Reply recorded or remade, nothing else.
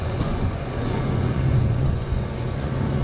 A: remade